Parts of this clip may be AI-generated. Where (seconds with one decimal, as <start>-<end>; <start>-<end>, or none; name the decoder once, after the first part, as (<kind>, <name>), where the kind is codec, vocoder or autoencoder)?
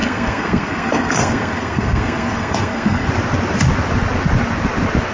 0.0-3.1 (codec, SNAC)